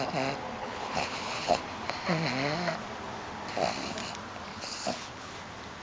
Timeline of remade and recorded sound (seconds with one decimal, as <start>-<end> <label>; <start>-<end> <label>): 0.0-0.6 recorded; 0.6-1.6 remade; 1.6-4.5 recorded; 4.5-5.3 remade; 5.3-5.8 recorded